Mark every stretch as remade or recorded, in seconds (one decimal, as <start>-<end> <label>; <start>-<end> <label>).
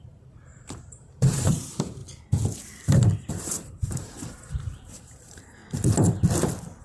0.0-2.0 remade; 2.0-3.3 recorded; 3.3-5.6 remade; 5.6-6.8 recorded